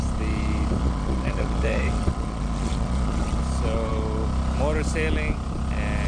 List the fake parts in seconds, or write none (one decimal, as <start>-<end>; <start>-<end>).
0.8-3.4